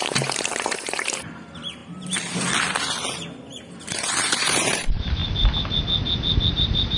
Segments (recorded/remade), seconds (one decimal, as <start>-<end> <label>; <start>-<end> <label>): 0.0-1.8 remade; 1.8-3.7 recorded; 3.7-5.2 remade; 5.2-6.5 recorded; 6.5-7.0 remade